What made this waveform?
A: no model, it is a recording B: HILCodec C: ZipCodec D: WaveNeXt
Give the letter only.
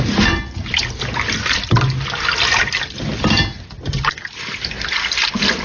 A